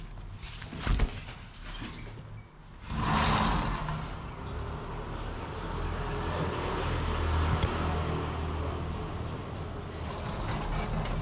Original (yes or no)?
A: yes